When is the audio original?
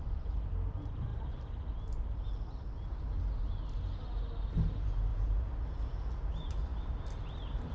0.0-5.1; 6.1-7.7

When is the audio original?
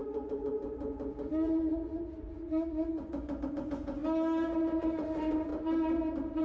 4.0-4.8; 5.5-6.4